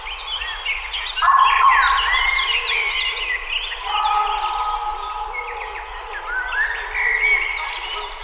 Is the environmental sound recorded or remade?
recorded